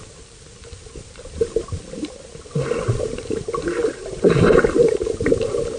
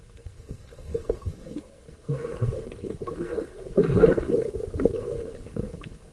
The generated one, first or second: second